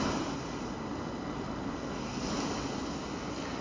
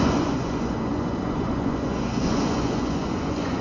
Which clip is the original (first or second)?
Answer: first